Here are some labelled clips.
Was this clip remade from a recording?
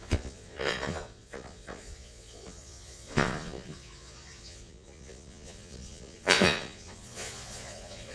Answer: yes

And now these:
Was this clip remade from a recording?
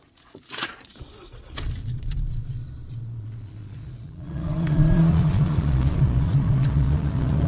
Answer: yes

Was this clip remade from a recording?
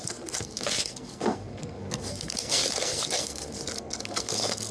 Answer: yes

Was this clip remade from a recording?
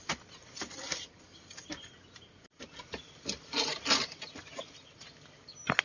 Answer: no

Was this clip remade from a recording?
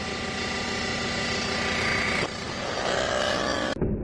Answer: no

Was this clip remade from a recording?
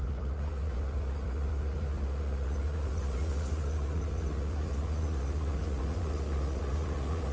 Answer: yes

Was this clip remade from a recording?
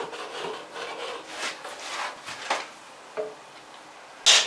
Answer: no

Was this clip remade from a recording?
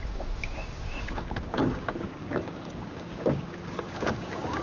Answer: yes